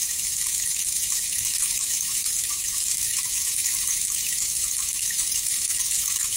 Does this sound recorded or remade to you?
remade